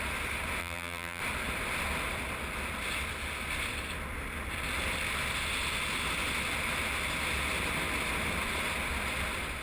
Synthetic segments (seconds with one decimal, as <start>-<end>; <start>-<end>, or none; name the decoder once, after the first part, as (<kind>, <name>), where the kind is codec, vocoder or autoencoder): 0.6-1.2 (vocoder, BigVGAN v2)